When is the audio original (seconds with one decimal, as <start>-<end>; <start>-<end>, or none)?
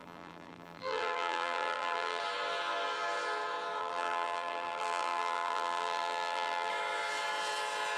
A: 2.2-3.8; 6.7-8.0